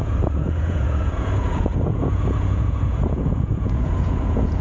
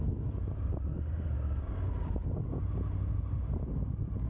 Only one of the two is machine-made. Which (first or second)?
first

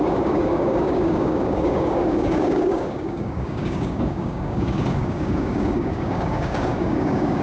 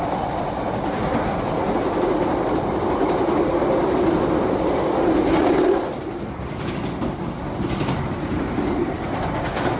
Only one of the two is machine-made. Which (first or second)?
first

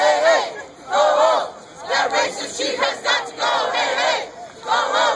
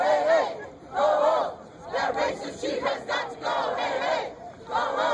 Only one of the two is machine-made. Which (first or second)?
second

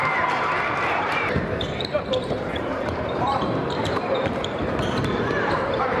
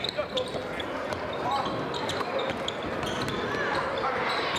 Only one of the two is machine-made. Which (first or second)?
first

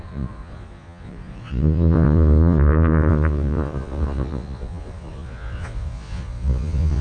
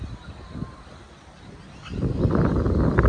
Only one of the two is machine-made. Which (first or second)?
first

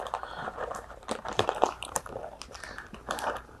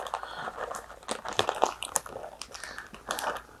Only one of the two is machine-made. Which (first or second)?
first